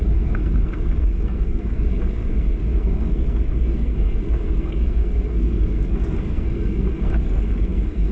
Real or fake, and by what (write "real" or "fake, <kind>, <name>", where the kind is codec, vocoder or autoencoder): fake, codec, SNAC